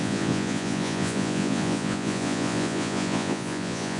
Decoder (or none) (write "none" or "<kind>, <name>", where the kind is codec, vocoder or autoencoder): vocoder, Vocos